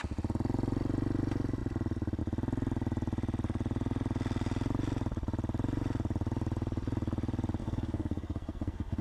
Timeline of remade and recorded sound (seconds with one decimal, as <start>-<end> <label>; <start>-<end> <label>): 0.0-7.6 recorded; 7.6-9.0 remade